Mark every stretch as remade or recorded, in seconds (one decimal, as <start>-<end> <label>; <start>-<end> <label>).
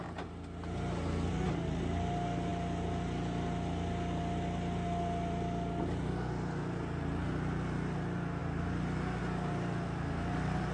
0.0-10.7 recorded